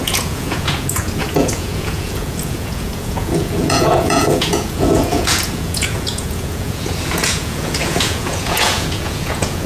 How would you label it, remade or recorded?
remade